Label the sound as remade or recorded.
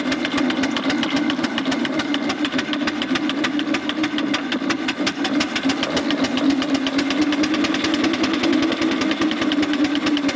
recorded